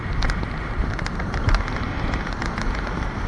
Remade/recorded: recorded